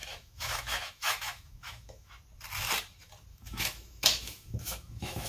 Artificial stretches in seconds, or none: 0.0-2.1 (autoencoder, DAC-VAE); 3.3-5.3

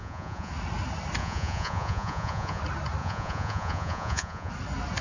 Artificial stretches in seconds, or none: 0.0-0.5 (vocoder, Vocos); 1.2-2.6; 3.0-4.5

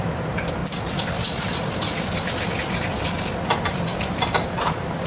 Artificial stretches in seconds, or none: 0.0-0.6 (vocoder, BigVGAN v2); 3.7-5.1

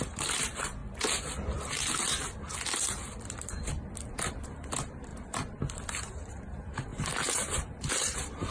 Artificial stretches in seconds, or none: 0.0-0.8 (vocoder, BigVGAN v2); 4.3-5.1; 6.0-8.5

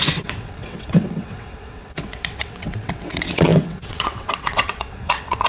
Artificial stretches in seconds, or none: 0.0-5.5 (vocoder, WaveNeXt)